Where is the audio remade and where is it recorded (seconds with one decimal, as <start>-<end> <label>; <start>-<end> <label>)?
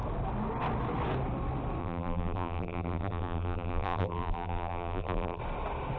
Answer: 0.0-1.8 recorded; 1.8-5.4 remade; 5.4-6.0 recorded